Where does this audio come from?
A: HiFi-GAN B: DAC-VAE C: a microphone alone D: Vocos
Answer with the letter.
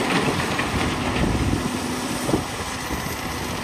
C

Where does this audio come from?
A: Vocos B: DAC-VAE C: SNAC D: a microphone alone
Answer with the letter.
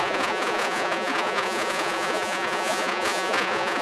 A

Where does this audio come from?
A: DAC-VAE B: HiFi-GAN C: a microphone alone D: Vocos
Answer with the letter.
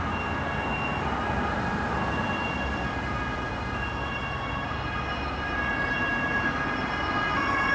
C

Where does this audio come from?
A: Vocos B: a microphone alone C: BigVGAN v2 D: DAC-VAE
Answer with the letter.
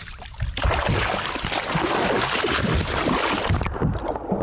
B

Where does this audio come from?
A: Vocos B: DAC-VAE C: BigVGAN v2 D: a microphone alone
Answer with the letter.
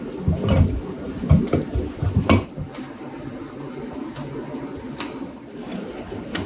D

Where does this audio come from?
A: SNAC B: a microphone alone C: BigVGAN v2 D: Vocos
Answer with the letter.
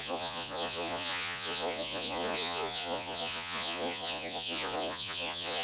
D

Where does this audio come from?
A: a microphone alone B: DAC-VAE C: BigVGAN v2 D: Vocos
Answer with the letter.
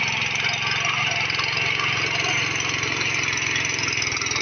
A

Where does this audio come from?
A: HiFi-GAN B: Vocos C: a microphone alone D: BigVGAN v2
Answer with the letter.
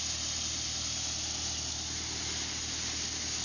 C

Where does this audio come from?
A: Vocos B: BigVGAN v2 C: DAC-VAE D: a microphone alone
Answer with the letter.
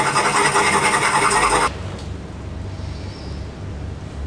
D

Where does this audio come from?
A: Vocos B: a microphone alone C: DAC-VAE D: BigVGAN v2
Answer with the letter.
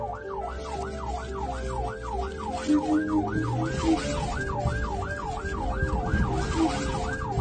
B